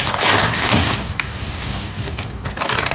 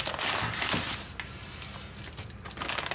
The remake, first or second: first